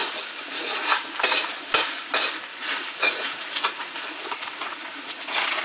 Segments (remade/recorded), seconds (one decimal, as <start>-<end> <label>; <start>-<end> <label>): 0.0-0.9 remade; 0.9-2.5 recorded; 2.5-5.6 remade